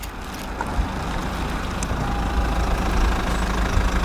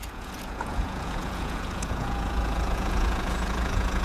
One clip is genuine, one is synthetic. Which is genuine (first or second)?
first